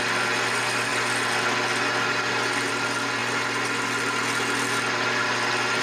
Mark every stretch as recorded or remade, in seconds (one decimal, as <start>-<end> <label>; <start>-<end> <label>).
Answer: 0.0-5.8 recorded